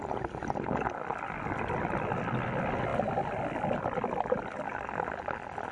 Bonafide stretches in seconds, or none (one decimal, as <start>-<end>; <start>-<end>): 0.0-5.7